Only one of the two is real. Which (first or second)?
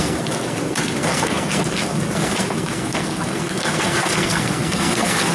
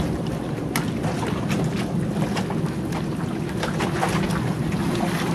second